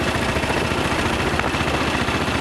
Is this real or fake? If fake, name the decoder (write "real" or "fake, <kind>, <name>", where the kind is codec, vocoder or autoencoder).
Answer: real